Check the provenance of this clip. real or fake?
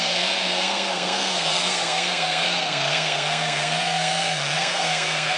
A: fake